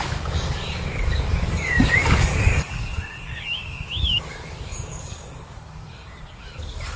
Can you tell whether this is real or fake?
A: fake